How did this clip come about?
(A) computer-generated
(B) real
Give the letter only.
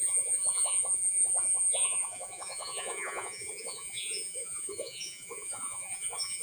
A